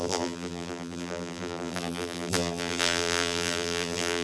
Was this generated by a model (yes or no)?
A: yes